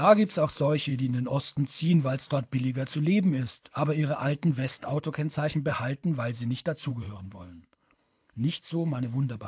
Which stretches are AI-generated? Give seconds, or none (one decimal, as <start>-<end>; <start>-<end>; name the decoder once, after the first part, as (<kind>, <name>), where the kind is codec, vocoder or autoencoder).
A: 0.0-5.7 (codec, HILCodec); 6.9-9.5